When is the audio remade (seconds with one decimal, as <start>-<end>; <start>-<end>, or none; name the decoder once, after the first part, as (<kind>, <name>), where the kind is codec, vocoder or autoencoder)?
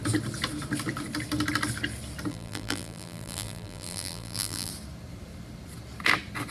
2.3-4.7 (vocoder, BigVGAN v2)